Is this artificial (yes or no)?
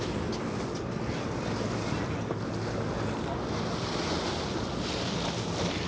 no